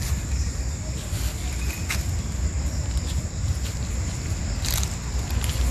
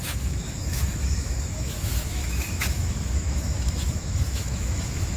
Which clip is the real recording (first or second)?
first